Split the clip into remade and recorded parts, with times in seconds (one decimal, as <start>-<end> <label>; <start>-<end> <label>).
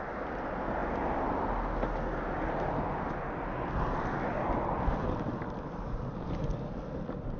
0.0-7.4 recorded